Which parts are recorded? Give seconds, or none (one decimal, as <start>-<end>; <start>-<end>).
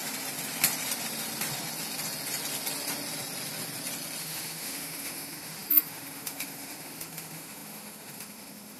0.0-4.2